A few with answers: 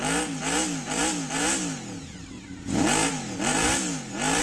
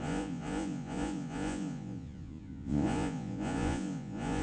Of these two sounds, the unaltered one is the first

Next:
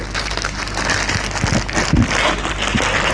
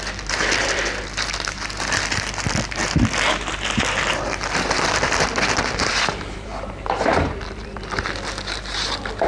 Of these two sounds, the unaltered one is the first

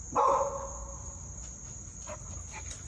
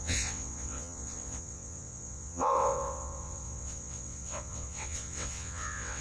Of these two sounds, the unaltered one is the first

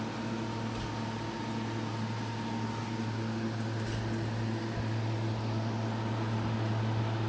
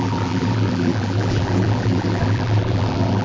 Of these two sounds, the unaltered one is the first